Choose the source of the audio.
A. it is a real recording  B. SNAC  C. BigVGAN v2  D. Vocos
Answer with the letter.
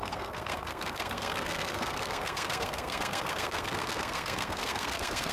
B